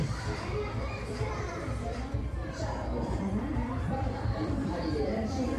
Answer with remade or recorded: remade